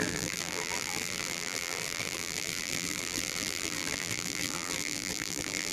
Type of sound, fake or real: fake